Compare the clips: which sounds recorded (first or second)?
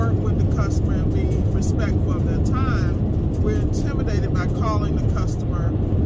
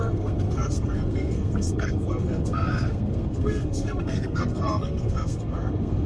first